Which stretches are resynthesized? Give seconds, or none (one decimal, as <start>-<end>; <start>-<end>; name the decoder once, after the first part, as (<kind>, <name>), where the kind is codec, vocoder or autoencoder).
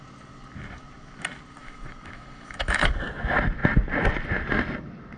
1.6-2.9 (autoencoder, DAC-VAE)